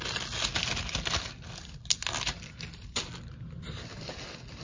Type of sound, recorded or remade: recorded